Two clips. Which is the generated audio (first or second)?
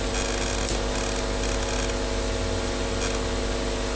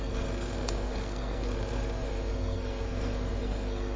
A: second